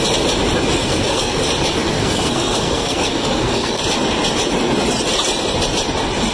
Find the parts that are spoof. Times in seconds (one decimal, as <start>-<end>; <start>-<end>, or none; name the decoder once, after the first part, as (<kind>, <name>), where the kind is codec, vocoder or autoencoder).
0.8-1.4 (codec, SNAC); 1.8-3.8